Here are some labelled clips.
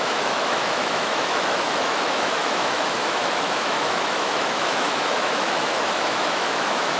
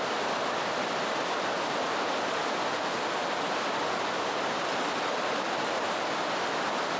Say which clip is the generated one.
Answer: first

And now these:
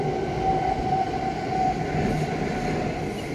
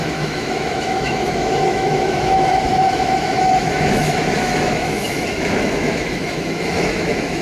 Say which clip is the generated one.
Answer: second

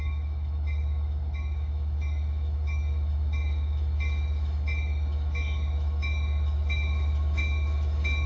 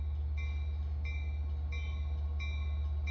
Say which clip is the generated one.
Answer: first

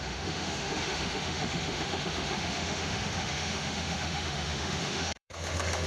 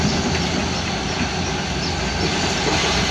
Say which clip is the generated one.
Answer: first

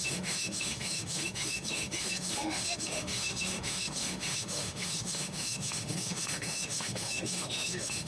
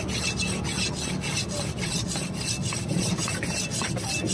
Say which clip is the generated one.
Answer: first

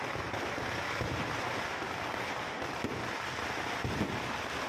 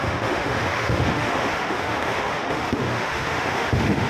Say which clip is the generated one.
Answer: second